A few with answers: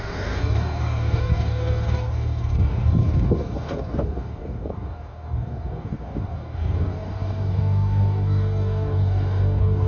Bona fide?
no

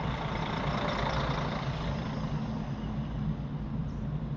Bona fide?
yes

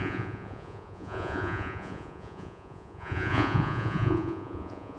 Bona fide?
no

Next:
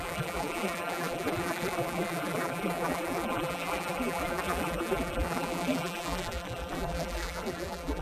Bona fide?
no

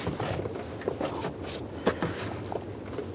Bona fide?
yes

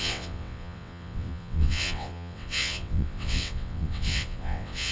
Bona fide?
no